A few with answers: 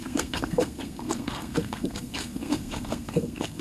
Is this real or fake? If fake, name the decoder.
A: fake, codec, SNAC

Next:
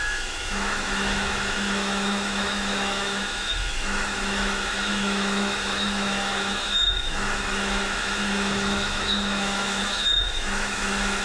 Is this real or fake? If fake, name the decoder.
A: fake, autoencoder, DAC-VAE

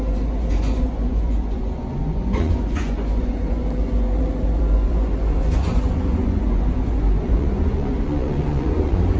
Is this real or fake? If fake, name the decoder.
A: fake, vocoder, Vocos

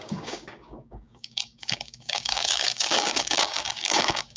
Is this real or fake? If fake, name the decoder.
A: fake, codec, DAC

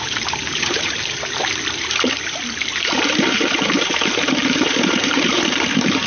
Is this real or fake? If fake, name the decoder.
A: fake, vocoder, BigVGAN v2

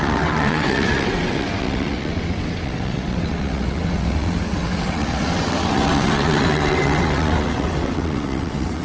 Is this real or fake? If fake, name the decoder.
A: fake, vocoder, WaveNeXt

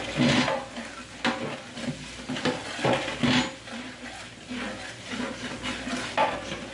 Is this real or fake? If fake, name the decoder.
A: real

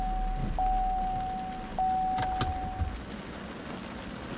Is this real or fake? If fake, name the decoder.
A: real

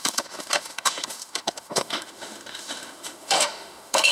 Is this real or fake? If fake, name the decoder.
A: fake, autoencoder, DAC-VAE